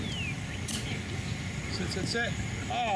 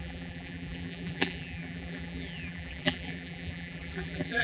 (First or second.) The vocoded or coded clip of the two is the second